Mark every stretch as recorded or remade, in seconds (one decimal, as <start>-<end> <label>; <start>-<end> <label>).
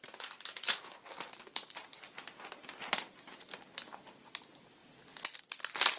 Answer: 0.0-6.0 recorded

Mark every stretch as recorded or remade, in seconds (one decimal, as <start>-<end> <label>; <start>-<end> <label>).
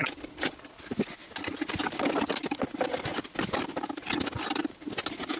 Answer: 0.0-5.4 recorded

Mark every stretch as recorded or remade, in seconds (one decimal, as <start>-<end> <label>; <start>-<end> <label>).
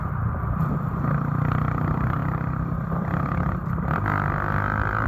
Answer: 0.0-5.1 recorded